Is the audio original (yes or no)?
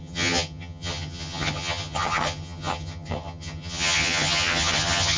no